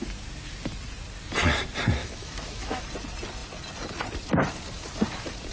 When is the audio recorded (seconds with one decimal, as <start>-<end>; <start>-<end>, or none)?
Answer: 0.0-2.0; 2.8-5.5